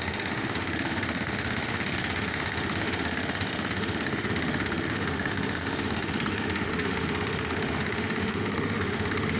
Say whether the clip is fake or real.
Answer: fake